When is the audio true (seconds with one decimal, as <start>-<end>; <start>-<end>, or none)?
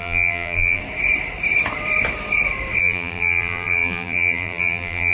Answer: 0.8-2.8